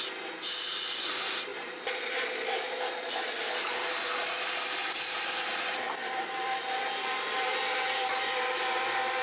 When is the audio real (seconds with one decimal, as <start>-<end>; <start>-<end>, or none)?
0.0-1.5; 2.8-3.6; 4.2-4.8